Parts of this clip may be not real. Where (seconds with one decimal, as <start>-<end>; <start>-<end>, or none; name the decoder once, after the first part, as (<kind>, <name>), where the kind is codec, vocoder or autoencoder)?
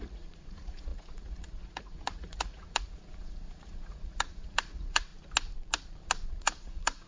0.0-5.1 (vocoder, Vocos); 6.3-7.1